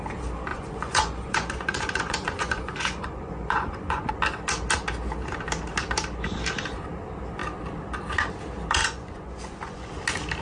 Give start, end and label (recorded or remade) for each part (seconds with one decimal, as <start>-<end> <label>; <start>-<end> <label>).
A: 0.0-0.5 recorded; 0.5-4.1 remade; 4.1-8.8 recorded; 8.8-9.9 remade; 9.9-10.4 recorded